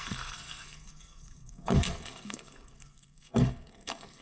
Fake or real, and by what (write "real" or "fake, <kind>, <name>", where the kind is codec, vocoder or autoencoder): fake, codec, SNAC